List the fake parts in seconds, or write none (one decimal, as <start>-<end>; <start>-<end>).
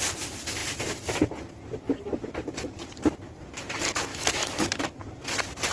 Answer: 4.1-4.8